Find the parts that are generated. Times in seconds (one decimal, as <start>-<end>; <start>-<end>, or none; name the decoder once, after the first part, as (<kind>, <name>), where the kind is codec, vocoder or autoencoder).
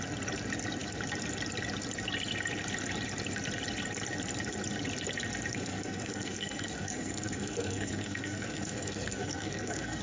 5.5-10.0 (codec, SNAC)